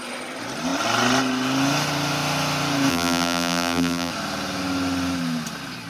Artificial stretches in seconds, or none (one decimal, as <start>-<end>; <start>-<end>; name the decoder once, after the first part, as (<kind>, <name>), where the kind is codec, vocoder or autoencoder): 2.9-4.1 (vocoder, BigVGAN v2)